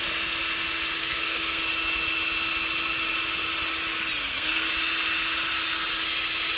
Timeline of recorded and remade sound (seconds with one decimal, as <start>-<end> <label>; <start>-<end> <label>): 0.0-1.0 recorded; 1.0-1.6 remade; 1.6-4.2 recorded; 4.2-4.7 remade; 4.7-6.6 recorded

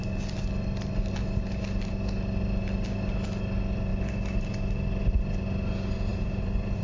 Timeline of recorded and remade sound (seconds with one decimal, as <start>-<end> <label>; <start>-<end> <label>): 0.0-6.1 recorded; 6.1-6.8 remade